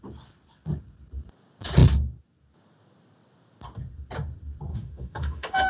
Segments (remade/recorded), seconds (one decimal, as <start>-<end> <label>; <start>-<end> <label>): 0.0-4.7 recorded; 4.7-5.7 remade